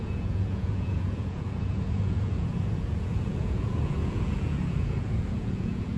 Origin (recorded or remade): remade